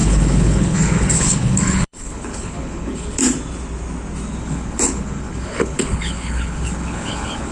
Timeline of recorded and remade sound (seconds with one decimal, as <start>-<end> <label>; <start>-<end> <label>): 0.0-3.2 remade; 3.2-4.4 recorded; 4.4-7.5 remade